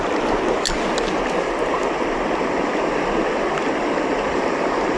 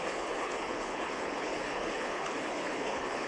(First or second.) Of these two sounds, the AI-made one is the second